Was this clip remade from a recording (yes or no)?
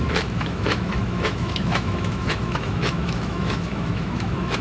yes